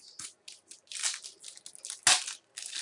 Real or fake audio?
real